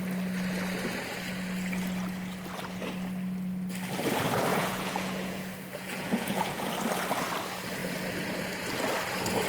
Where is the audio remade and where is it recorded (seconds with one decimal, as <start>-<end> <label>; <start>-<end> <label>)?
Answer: 0.0-4.5 recorded; 4.5-6.7 remade; 6.7-9.5 recorded